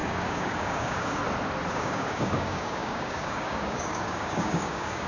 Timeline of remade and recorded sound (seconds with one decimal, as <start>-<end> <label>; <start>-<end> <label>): 0.0-1.2 remade; 1.2-1.7 recorded; 1.7-5.1 remade